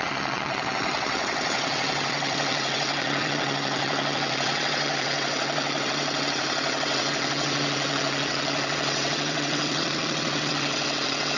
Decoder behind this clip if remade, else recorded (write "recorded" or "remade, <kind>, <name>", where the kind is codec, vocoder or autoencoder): remade, vocoder, WaveNeXt